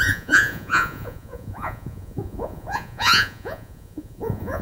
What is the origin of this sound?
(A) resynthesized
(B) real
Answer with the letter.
A